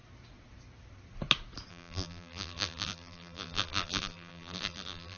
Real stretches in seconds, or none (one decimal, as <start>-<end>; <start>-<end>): 0.0-1.7